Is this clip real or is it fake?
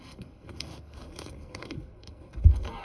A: fake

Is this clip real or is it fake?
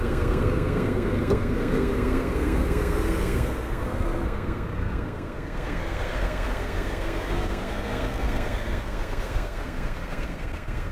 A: fake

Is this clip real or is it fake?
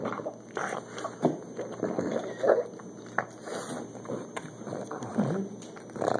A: real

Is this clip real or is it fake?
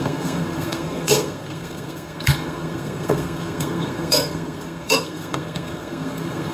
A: fake